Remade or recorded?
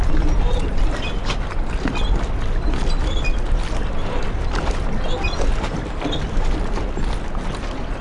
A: recorded